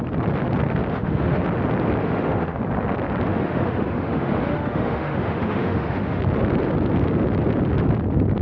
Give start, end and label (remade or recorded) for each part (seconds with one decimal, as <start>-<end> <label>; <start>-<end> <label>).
0.0-0.9 recorded; 0.9-1.4 remade; 1.4-2.0 recorded; 2.0-2.6 remade; 2.6-3.3 recorded; 3.3-6.2 remade; 6.2-8.4 recorded